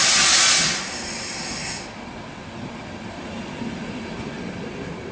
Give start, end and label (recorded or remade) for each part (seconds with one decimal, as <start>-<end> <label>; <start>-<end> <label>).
0.0-3.1 recorded; 3.1-5.1 remade